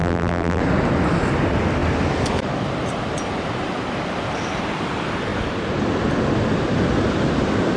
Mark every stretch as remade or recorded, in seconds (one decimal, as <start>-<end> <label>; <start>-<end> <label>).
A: 0.0-0.6 remade; 0.6-7.8 recorded